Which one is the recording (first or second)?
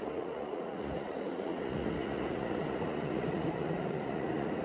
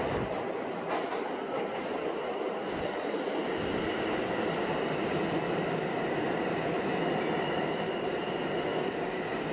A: second